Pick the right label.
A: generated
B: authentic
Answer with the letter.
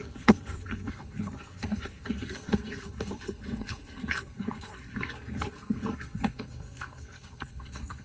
A